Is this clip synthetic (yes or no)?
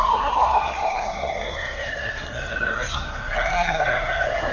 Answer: yes